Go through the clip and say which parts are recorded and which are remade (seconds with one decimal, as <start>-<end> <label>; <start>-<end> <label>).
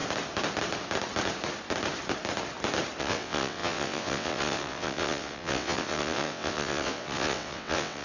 0.0-3.0 recorded; 3.0-8.0 remade